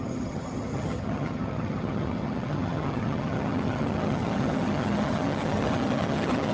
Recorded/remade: remade